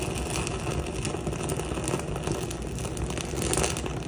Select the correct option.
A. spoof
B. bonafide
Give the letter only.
B